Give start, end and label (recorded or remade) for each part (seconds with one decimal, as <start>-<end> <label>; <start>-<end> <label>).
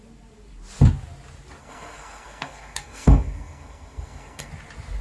0.0-1.6 recorded; 1.6-4.5 remade; 4.5-5.0 recorded